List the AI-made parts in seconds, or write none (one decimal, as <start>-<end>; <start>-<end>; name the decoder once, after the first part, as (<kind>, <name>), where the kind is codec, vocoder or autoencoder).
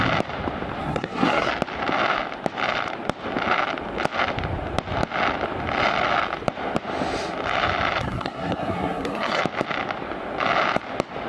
0.8-1.5 (codec, SNAC); 8.0-9.4